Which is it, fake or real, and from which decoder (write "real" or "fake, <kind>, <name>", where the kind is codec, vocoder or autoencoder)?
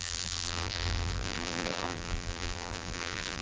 fake, vocoder, BigVGAN v2